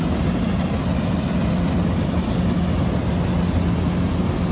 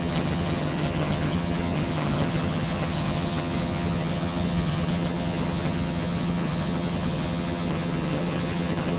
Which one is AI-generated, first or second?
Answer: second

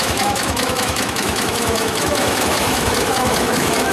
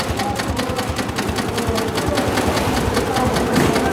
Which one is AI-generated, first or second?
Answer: first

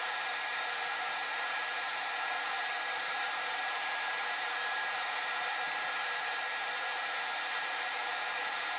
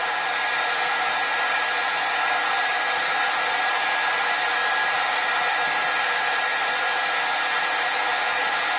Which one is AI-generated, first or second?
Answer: first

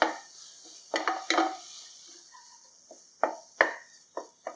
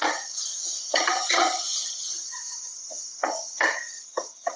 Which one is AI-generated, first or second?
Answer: second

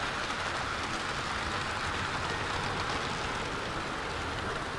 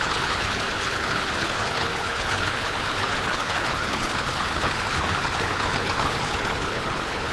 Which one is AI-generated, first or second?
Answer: second